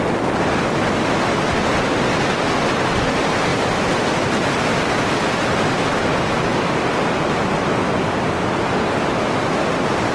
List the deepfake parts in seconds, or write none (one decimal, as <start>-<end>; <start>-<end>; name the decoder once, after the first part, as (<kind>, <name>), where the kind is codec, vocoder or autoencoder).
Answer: none

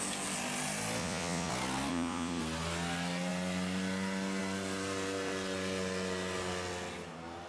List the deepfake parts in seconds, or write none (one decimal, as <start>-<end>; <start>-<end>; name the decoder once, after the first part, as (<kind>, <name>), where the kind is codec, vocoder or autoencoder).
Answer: 1.0-1.5 (vocoder, Vocos); 1.9-2.4